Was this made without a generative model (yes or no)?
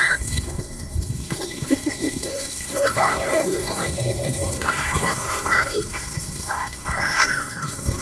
no